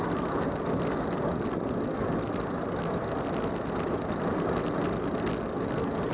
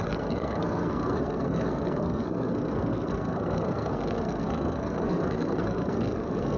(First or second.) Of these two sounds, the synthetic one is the second